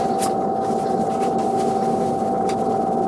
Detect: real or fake real